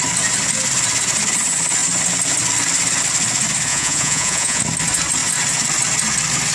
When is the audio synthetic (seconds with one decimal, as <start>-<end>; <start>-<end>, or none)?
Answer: 3.7-4.6